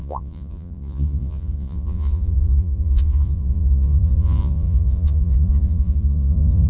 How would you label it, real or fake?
fake